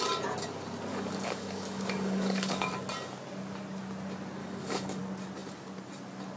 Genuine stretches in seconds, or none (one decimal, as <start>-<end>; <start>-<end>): 0.0-0.9; 2.7-4.4; 5.0-6.4